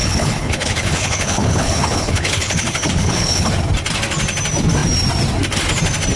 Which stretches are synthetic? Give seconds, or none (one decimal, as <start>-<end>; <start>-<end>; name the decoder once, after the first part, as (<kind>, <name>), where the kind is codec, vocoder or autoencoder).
0.0-3.5 (codec, HILCodec)